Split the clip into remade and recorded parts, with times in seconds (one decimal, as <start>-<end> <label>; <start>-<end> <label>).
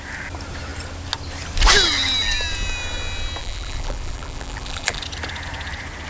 0.0-3.4 recorded; 3.4-5.0 remade; 5.0-6.1 recorded